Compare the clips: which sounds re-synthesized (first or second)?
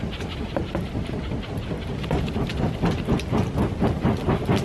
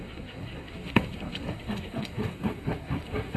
second